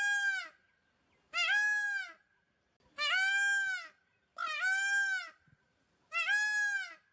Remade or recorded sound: recorded